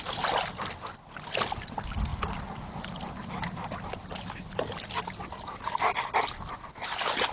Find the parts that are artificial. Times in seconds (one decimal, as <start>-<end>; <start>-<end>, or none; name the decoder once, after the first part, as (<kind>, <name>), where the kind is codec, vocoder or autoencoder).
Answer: none